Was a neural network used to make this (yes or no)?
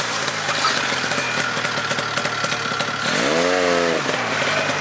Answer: no